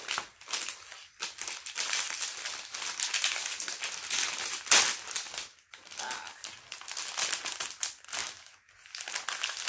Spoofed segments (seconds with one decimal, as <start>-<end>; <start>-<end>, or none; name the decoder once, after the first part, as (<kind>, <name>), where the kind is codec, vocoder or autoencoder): 8.2-8.7 (codec, DAC)